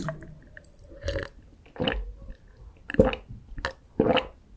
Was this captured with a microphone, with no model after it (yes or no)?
yes